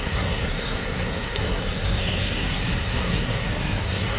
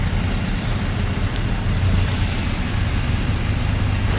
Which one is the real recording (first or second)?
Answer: second